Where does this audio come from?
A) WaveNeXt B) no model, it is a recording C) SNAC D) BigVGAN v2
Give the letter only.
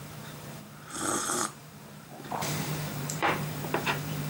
D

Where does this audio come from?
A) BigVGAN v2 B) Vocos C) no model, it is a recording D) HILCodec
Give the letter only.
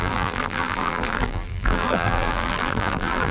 A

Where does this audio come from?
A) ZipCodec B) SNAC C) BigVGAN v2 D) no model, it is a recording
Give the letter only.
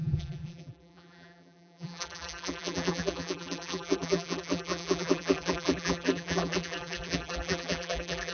C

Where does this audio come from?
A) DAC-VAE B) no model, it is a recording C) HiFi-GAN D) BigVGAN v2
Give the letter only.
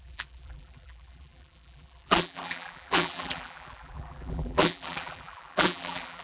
D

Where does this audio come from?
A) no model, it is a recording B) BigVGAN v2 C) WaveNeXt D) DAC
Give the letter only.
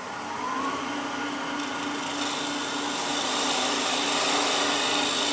A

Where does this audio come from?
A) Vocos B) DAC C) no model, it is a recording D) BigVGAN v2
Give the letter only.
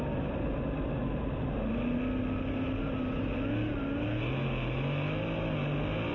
C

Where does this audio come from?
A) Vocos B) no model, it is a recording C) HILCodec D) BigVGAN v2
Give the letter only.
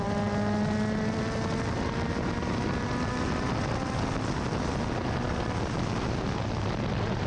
B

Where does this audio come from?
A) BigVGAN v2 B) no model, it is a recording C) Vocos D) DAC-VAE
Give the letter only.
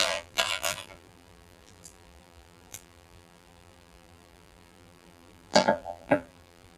A